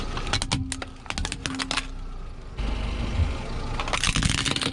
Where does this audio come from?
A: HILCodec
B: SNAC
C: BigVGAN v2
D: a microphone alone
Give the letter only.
D